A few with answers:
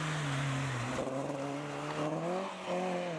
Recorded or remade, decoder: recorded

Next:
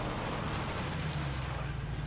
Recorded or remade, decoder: recorded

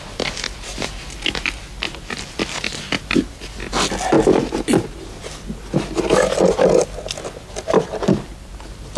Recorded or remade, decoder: recorded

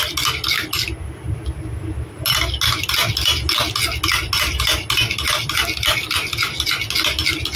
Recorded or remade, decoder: recorded